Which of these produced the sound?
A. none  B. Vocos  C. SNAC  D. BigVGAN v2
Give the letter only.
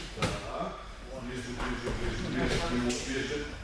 D